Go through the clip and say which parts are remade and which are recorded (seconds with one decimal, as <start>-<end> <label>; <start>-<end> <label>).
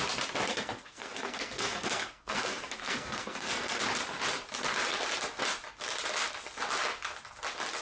0.0-0.5 recorded; 0.5-3.8 remade; 3.8-7.8 recorded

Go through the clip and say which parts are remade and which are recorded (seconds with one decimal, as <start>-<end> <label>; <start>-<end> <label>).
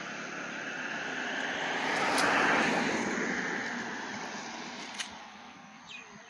0.0-5.2 recorded; 5.2-5.8 remade; 5.8-6.3 recorded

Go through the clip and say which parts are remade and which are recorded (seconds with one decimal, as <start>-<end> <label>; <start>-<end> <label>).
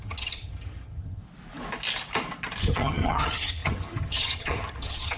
0.0-1.2 remade; 1.2-2.6 recorded; 2.6-5.2 remade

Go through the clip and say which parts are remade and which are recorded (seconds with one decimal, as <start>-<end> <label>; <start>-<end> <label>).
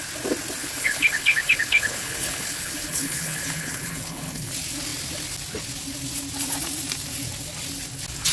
0.0-0.6 recorded; 0.6-4.5 remade; 4.5-8.3 recorded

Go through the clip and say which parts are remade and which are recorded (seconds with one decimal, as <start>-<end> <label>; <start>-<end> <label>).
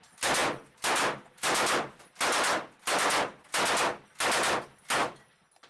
0.0-5.7 recorded